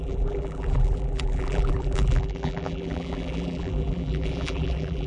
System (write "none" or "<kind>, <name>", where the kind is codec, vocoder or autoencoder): vocoder, BigVGAN v2